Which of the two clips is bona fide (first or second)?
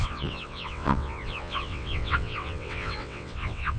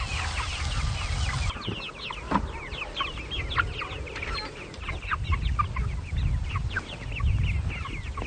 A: second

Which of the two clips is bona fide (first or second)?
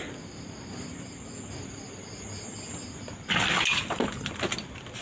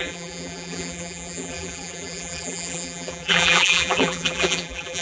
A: first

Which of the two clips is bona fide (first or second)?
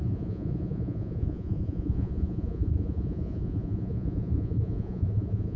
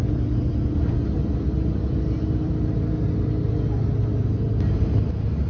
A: second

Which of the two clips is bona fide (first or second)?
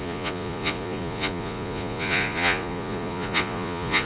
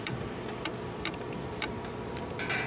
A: second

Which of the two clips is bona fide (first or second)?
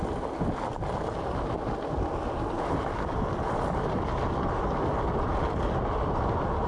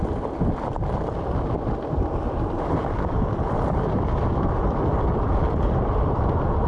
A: first